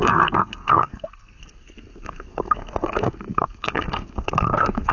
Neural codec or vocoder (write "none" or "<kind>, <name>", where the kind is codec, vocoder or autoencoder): codec, SNAC